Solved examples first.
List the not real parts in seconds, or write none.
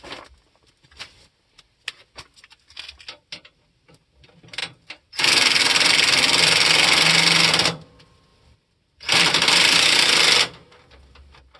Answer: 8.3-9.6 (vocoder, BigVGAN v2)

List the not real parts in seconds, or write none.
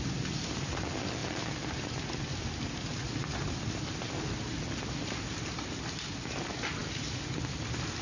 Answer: none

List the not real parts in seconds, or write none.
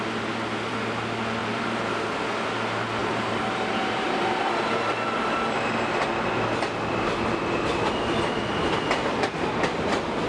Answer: 1.4-2.2 (vocoder, BigVGAN v2); 3.0-4.9